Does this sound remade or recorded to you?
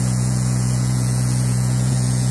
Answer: remade